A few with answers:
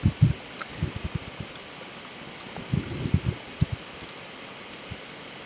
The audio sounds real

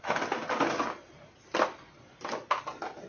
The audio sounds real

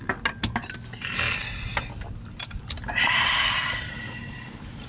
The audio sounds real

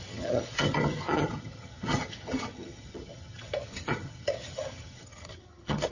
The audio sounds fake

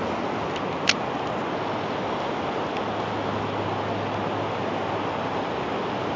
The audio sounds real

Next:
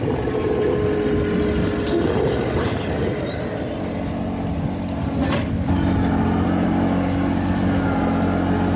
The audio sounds real